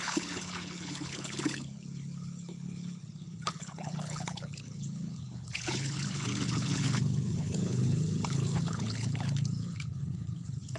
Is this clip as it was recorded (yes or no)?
no